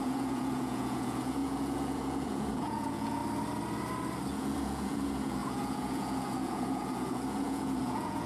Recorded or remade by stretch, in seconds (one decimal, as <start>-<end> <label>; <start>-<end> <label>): 0.0-3.2 remade; 3.2-4.3 recorded; 4.3-8.3 remade